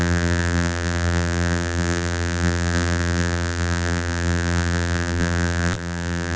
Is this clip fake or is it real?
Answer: fake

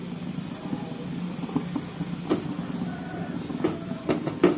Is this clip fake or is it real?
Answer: real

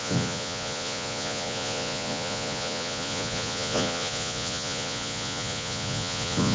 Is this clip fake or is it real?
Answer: fake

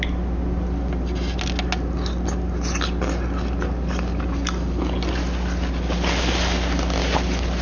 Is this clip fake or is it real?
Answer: real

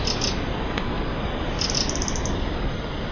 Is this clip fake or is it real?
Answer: real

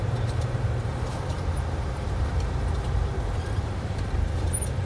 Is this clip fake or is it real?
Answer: fake